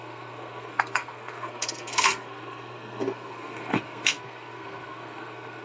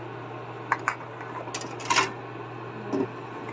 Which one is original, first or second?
second